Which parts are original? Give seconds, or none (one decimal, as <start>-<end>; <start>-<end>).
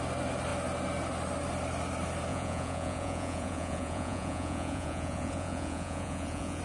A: 0.0-2.3